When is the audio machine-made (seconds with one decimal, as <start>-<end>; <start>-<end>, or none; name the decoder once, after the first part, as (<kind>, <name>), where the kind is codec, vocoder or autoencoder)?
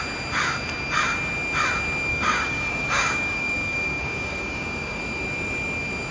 2.1-5.0 (codec, DAC)